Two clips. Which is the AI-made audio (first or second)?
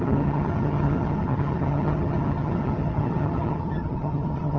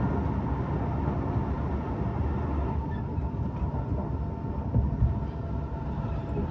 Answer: first